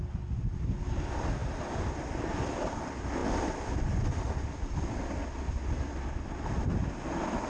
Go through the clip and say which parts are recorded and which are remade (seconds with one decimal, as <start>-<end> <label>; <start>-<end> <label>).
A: 0.0-7.5 recorded